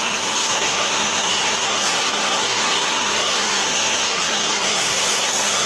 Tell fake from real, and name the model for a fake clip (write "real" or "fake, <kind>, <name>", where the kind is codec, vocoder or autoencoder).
fake, codec, SNAC